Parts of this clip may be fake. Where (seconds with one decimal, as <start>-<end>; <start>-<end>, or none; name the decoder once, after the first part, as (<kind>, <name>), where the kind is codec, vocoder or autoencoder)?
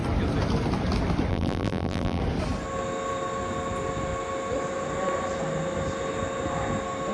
1.3-2.2 (vocoder, BigVGAN v2)